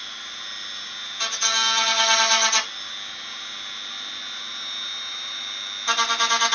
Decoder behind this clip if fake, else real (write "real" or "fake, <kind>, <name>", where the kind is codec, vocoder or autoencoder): real